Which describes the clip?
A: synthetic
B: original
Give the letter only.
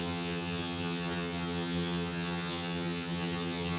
A